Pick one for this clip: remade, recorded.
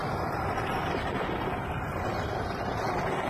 recorded